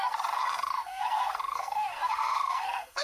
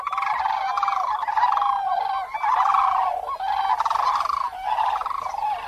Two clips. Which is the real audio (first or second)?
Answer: second